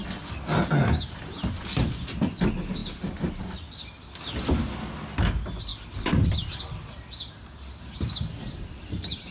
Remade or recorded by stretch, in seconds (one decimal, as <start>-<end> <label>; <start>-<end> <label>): 0.0-9.3 recorded